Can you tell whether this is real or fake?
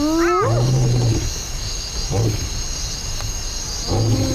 real